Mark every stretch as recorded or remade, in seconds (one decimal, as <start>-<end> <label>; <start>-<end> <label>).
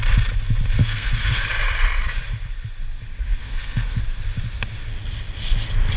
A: 0.0-0.8 recorded; 0.8-1.4 remade; 1.4-3.4 recorded; 3.4-4.0 remade; 4.0-6.0 recorded